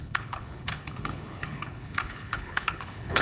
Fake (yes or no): yes